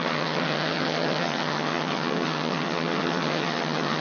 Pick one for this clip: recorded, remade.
remade